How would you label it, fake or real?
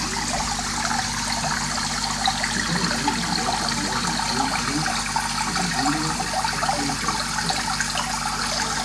real